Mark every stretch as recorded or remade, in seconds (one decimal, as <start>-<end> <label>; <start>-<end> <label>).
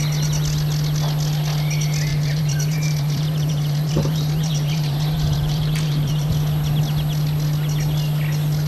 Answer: 0.0-2.1 recorded; 2.1-6.3 remade; 6.3-8.7 recorded